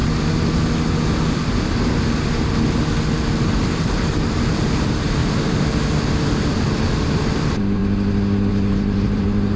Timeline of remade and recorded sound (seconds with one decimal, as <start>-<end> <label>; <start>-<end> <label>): 0.0-3.3 recorded; 3.3-5.2 remade; 5.2-7.0 recorded; 7.0-7.8 remade; 7.8-8.5 recorded; 8.5-9.6 remade